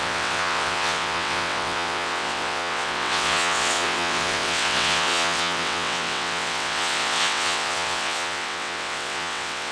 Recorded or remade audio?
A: remade